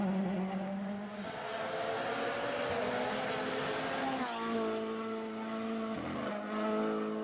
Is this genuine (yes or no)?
yes